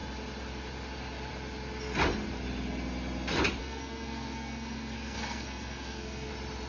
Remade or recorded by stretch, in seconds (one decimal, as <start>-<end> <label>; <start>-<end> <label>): 0.0-3.6 recorded; 3.6-6.3 remade; 6.3-6.7 recorded